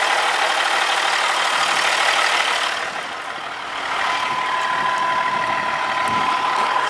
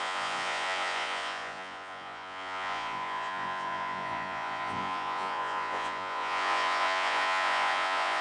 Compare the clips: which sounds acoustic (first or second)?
first